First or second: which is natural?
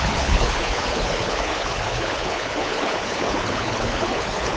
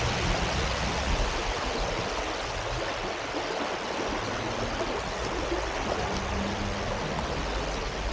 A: second